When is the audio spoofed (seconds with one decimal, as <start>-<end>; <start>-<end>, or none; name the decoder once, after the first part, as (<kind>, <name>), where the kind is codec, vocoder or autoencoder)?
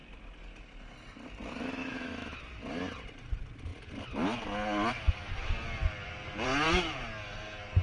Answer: 1.8-2.4 (autoencoder, DAC-VAE)